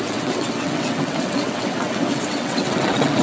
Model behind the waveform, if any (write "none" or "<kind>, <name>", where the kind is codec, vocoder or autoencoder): vocoder, WaveNeXt